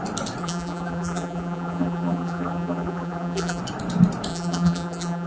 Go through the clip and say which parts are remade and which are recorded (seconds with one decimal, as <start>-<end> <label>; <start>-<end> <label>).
0.0-0.4 recorded; 0.4-3.6 remade; 3.6-4.3 recorded; 4.3-5.3 remade